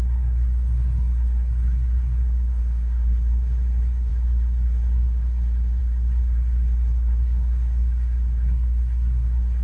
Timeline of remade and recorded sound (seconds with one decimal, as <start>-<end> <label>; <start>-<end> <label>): 0.0-9.6 remade